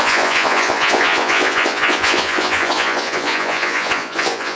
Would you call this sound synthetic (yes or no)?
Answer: yes